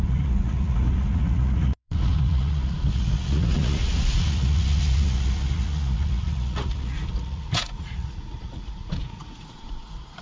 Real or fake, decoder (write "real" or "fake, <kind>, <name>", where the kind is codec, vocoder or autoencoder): fake, vocoder, Vocos